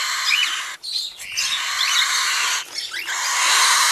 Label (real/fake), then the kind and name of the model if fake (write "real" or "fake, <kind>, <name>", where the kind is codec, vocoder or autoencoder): real